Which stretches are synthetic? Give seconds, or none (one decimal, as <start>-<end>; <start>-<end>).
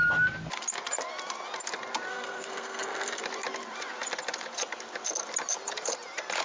2.1-3.2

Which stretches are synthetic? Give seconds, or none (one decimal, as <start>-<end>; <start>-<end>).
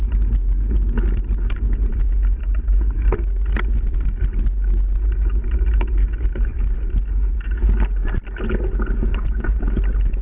9.1-9.6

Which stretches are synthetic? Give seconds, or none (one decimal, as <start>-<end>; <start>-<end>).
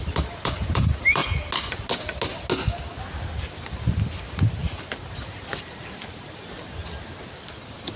0.0-1.2; 4.6-6.8; 7.4-8.0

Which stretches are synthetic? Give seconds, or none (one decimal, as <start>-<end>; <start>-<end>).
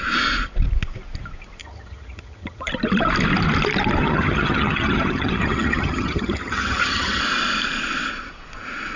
1.6-2.7; 4.0-7.2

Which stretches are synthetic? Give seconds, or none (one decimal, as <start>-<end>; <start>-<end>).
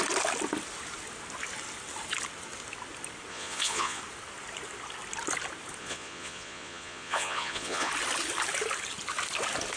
3.3-4.0; 5.8-7.9